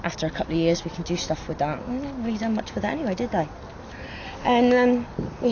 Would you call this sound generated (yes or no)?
no